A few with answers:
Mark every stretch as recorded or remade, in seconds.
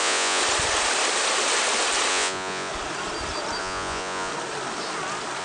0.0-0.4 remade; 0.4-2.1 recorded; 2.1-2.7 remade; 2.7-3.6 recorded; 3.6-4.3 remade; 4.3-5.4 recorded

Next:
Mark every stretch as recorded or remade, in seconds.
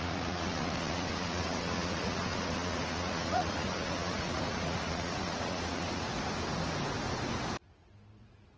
0.0-6.1 remade; 6.1-8.2 recorded; 8.2-8.6 remade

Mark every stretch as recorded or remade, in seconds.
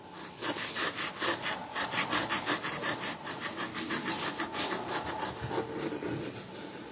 0.0-6.9 recorded